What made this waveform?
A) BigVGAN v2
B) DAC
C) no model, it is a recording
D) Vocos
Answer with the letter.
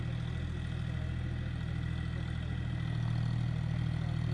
C